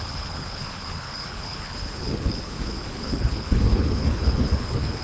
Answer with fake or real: fake